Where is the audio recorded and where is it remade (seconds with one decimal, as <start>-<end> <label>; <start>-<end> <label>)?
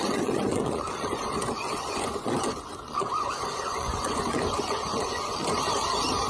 0.0-5.4 remade; 5.4-6.3 recorded